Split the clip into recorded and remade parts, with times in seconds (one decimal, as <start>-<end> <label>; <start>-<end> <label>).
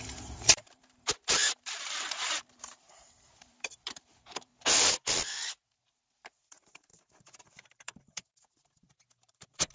0.0-4.5 remade; 4.5-5.5 recorded; 5.5-9.7 remade